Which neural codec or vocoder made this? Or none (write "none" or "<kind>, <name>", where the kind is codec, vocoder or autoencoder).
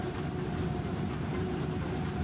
none